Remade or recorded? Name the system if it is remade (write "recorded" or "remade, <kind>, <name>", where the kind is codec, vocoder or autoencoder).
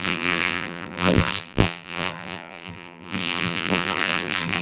remade, vocoder, BigVGAN v2